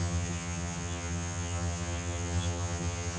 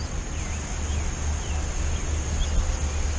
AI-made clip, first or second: first